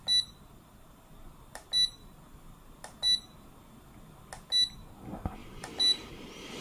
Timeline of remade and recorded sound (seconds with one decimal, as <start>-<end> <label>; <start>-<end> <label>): 0.0-5.4 recorded; 5.4-6.1 remade; 6.1-6.6 recorded